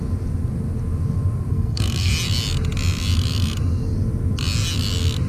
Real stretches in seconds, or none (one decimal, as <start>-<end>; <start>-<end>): 0.0-1.5; 2.1-5.3

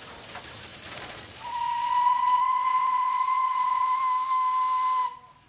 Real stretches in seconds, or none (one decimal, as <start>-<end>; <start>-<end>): 0.0-0.7; 4.0-5.5

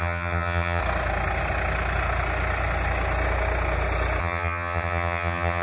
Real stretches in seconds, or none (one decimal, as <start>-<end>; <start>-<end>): 0.8-4.2

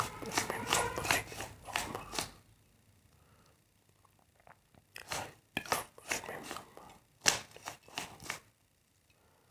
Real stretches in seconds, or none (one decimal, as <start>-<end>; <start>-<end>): 0.0-9.5

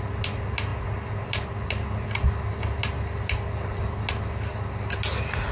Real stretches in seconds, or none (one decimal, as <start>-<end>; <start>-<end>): 0.0-5.5

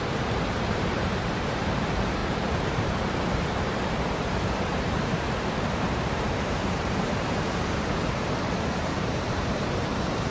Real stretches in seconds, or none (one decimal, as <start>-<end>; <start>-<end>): none